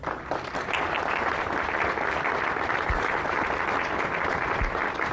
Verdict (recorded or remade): recorded